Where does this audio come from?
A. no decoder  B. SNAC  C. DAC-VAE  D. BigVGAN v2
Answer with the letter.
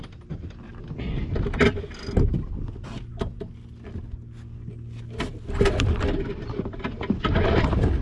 A